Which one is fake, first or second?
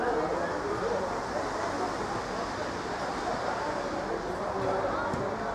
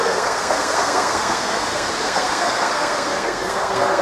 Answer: second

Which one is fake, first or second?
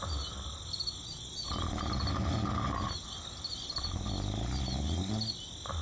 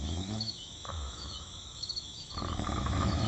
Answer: second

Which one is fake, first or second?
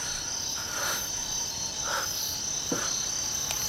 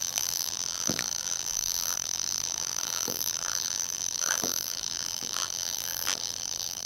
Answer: second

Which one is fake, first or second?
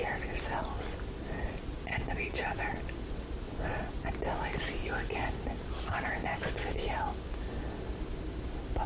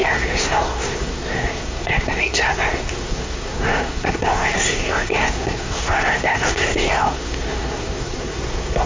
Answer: second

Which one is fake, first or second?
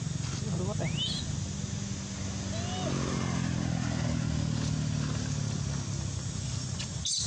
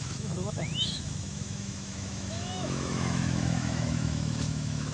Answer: second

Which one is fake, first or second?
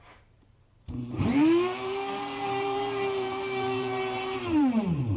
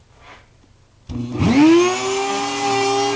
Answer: first